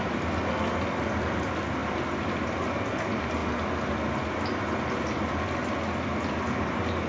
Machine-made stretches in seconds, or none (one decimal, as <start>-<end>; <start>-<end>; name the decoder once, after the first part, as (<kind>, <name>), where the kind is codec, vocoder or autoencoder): none

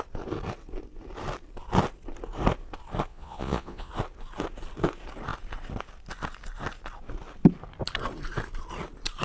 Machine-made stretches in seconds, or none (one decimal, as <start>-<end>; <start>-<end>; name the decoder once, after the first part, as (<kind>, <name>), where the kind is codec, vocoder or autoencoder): 3.1-3.9 (vocoder, Vocos)

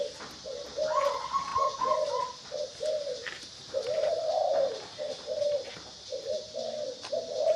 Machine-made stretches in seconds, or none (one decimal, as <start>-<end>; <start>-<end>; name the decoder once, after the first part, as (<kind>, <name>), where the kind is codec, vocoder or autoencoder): 3.2-5.7 (vocoder, BigVGAN v2)

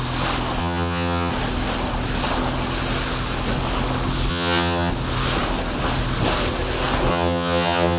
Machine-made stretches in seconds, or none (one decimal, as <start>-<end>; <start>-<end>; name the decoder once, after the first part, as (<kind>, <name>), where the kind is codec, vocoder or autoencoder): 0.6-1.3 (vocoder, HiFi-GAN); 4.3-4.9; 7.1-8.0

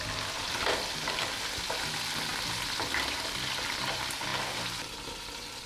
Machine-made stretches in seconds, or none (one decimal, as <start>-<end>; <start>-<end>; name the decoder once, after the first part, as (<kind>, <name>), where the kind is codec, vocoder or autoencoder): none